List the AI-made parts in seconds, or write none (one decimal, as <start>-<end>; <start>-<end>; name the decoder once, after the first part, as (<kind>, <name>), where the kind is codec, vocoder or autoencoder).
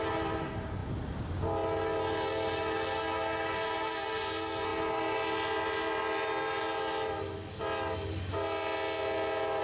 none